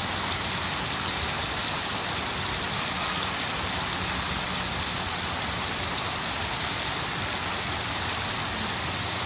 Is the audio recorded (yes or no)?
yes